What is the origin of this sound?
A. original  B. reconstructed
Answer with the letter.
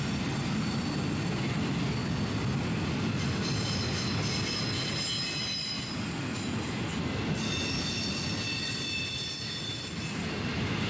A